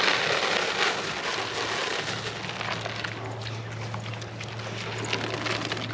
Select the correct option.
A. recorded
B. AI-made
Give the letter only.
A